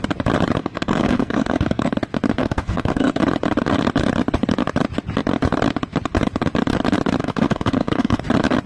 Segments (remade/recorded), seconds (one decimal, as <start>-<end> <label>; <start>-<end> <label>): 0.0-0.6 recorded; 0.6-1.9 remade; 1.9-2.4 recorded; 2.4-3.2 remade; 3.2-7.2 recorded; 7.2-8.2 remade; 8.2-8.7 recorded